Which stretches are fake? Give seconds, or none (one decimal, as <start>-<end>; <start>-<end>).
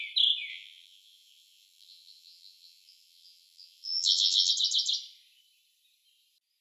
0.5-4.5